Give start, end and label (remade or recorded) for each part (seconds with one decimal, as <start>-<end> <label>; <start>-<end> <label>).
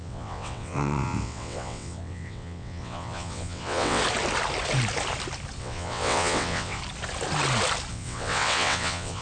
0.0-4.0 remade; 4.0-5.6 recorded; 5.6-6.8 remade; 6.8-7.9 recorded; 7.9-9.2 remade